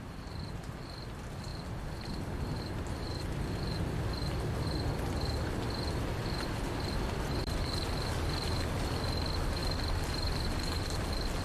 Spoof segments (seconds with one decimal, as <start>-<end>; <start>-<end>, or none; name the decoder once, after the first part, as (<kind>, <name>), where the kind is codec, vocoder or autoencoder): none